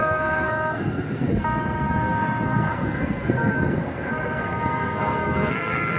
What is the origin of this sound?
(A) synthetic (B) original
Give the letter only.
A